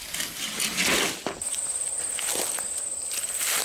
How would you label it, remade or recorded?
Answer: recorded